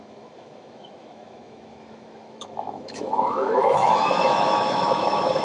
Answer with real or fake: fake